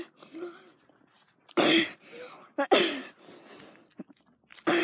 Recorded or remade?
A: recorded